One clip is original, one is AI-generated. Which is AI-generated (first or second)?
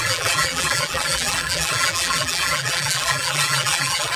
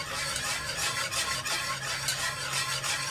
first